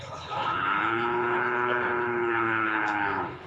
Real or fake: fake